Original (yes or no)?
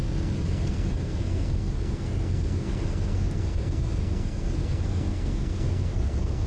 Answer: no